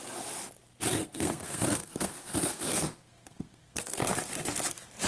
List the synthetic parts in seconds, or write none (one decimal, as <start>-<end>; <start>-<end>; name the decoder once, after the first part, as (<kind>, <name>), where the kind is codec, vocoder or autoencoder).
1.0-4.1 (codec, SNAC)